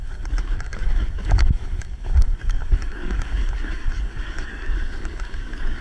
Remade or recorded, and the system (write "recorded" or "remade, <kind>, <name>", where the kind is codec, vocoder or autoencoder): remade, codec, DAC